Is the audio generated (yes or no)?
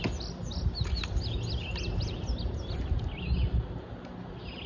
no